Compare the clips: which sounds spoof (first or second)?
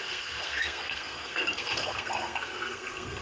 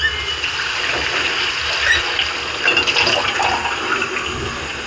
first